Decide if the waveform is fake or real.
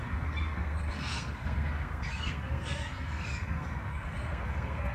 fake